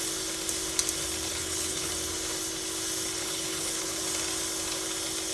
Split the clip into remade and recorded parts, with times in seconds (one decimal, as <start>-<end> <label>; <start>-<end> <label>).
0.0-1.3 recorded; 1.3-1.9 remade; 1.9-3.2 recorded; 3.2-4.0 remade; 4.0-5.3 recorded